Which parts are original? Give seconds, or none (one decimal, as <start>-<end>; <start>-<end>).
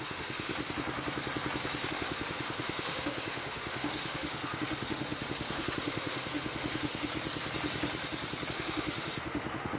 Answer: 0.5-1.9; 7.1-8.5